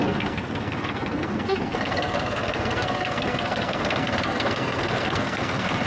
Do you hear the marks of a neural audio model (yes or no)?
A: yes